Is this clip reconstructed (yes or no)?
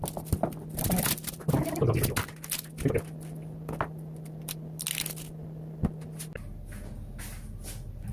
no